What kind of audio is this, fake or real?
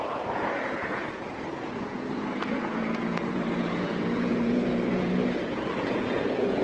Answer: fake